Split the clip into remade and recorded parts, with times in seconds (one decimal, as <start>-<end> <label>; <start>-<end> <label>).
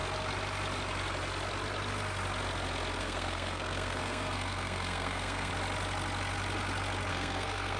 0.0-3.0 recorded; 3.0-5.5 remade; 5.5-7.1 recorded; 7.1-7.8 remade